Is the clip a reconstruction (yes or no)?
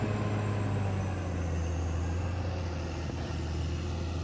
no